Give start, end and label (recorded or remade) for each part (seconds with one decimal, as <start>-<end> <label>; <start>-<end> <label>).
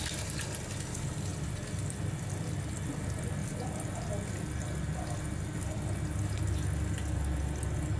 0.0-8.0 recorded